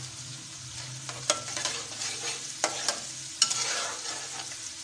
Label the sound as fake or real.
real